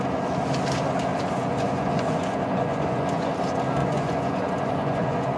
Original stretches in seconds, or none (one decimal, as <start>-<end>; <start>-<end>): 0.0-1.1; 3.3-3.8